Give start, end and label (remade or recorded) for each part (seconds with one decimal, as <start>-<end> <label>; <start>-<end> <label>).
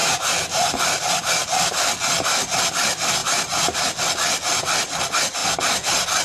0.0-1.0 remade; 1.0-3.2 recorded; 3.2-4.0 remade; 4.0-6.2 recorded